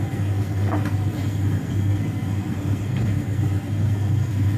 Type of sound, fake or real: fake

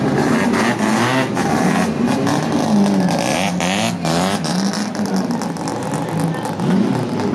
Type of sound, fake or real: real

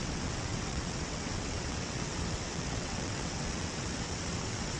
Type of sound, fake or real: fake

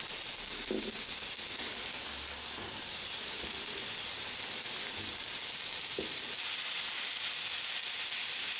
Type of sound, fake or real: real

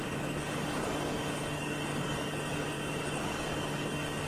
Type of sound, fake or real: fake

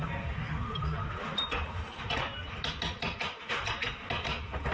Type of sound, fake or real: fake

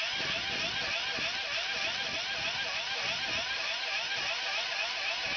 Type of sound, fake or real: real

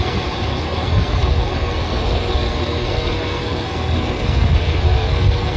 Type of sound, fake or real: fake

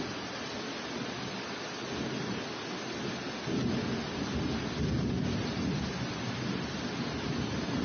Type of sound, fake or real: real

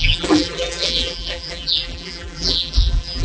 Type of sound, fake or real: fake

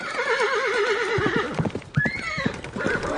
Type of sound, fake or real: real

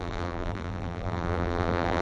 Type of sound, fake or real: fake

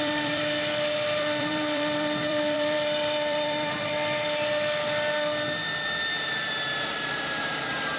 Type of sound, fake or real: fake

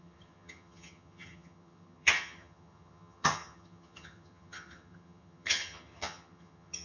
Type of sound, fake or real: fake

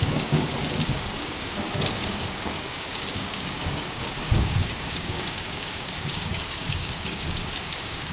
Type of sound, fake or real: fake